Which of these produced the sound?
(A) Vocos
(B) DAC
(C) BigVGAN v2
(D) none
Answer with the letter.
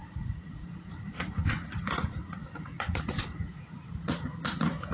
A